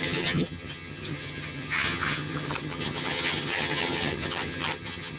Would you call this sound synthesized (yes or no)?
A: yes